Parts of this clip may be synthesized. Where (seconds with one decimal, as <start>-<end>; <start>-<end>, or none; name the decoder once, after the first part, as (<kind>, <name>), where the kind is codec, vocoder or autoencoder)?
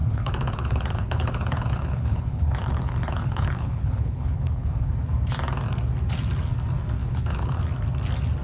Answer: 0.0-4.9 (codec, HILCodec); 7.0-7.6